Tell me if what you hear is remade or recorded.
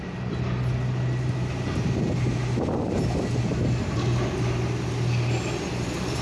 recorded